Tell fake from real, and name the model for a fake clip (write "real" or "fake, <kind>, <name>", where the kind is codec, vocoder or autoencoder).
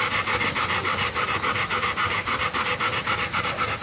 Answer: fake, vocoder, BigVGAN v2